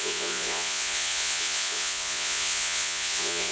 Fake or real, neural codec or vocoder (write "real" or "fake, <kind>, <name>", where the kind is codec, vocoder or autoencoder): fake, vocoder, Vocos